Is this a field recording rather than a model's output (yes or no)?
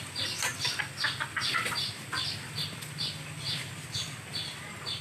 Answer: yes